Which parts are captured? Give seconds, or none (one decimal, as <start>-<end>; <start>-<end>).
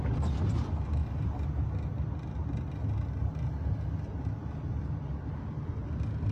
0.0-6.3